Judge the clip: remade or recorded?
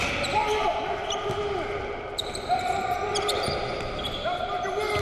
recorded